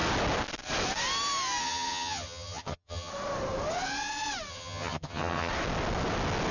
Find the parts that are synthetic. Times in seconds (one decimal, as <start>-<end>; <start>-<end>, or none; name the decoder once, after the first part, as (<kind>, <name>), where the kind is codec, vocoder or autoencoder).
1.6-3.1 (vocoder, HiFi-GAN); 4.5-5.5